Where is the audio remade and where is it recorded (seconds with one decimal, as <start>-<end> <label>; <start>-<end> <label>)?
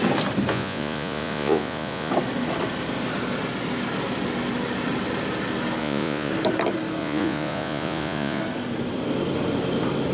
0.0-0.5 recorded; 0.5-2.1 remade; 2.1-5.8 recorded; 5.8-6.3 remade; 6.3-7.0 recorded; 7.0-8.4 remade; 8.4-10.1 recorded